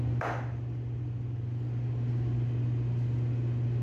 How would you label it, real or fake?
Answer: real